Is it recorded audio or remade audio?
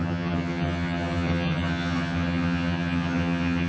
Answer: remade